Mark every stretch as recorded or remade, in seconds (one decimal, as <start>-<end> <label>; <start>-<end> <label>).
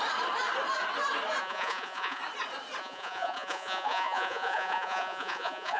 0.0-1.4 recorded; 1.4-2.2 remade; 2.2-2.8 recorded; 2.8-5.8 remade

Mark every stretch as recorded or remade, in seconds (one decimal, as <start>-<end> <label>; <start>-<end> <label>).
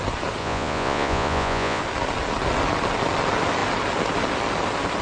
0.0-0.4 recorded; 0.4-1.8 remade; 1.8-5.0 recorded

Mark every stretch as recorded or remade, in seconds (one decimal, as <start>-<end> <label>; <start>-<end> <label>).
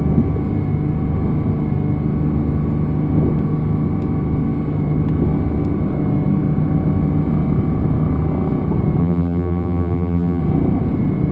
0.0-9.0 recorded; 9.0-10.4 remade; 10.4-11.3 recorded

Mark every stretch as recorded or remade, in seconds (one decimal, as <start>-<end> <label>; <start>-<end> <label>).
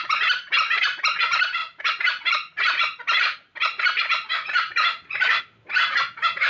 0.0-6.5 recorded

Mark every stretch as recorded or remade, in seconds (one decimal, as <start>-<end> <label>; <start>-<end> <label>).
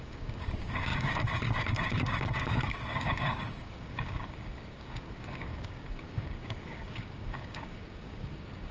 0.0-8.7 remade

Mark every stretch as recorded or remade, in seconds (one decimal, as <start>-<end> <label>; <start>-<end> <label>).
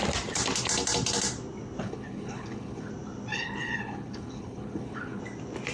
0.0-1.8 recorded; 1.8-2.9 remade; 2.9-3.3 recorded; 3.3-5.2 remade; 5.2-5.7 recorded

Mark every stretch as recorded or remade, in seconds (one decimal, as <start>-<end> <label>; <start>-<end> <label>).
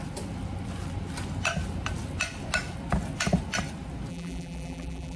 0.0-4.1 recorded; 4.1-5.2 remade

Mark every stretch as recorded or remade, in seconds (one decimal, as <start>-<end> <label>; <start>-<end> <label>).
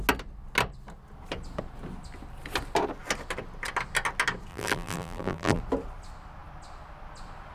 0.0-4.5 recorded; 4.5-5.6 remade; 5.6-7.5 recorded